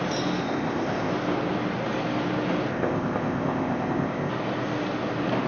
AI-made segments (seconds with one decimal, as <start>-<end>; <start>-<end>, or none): 0.4-1.1; 2.7-4.3